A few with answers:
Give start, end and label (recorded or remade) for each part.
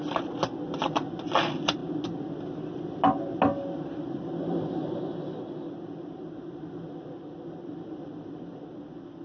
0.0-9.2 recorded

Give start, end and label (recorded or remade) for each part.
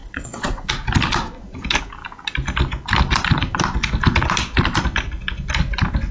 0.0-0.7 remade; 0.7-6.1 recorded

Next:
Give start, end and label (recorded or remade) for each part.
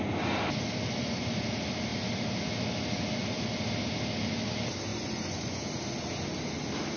0.0-4.9 recorded; 4.9-5.6 remade; 5.6-7.0 recorded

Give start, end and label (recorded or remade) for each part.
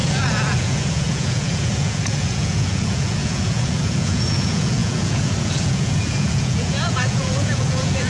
0.0-8.1 remade